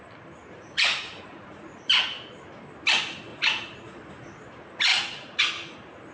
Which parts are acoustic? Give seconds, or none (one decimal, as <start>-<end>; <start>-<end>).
0.0-0.4; 1.9-3.3; 4.0-4.9; 5.4-6.1